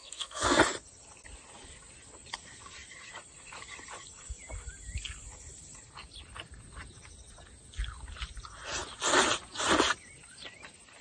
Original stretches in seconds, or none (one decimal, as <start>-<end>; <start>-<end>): 0.6-11.0